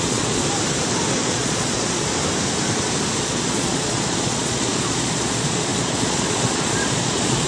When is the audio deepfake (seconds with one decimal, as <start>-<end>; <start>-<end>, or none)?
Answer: 0.0-0.4; 1.1-2.1; 3.2-7.5